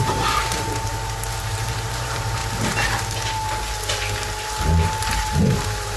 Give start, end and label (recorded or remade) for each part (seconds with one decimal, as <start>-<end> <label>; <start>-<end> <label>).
0.0-0.9 remade; 0.9-1.4 recorded; 1.4-2.4 remade; 2.4-5.0 recorded; 5.0-6.0 remade